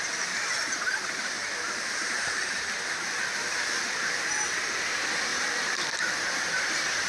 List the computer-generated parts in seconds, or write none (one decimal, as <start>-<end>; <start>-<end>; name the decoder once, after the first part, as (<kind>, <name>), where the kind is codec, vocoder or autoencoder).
5.3-6.3 (vocoder, BigVGAN v2)